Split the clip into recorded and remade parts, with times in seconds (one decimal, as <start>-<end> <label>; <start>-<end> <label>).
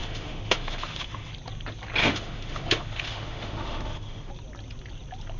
0.0-1.3 remade; 1.3-2.0 recorded; 2.0-4.3 remade; 4.3-5.4 recorded